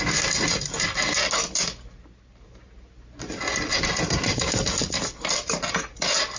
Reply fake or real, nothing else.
real